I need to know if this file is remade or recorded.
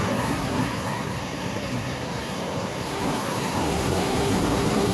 remade